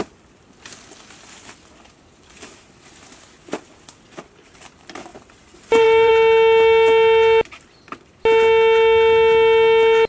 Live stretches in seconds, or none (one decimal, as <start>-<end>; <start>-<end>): 0.0-5.1; 6.1-10.1